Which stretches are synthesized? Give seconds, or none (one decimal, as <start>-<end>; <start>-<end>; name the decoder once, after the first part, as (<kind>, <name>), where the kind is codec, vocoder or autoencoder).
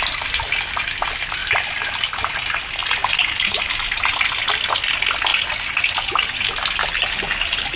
2.8-3.6 (vocoder, BigVGAN v2)